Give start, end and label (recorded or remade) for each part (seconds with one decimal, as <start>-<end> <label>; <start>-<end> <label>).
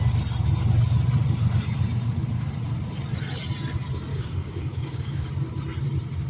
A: 0.0-4.1 recorded; 4.1-5.3 remade; 5.3-6.3 recorded